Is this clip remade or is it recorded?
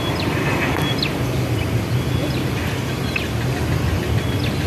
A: recorded